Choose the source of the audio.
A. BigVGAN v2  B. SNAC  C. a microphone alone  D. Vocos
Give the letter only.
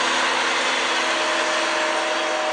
C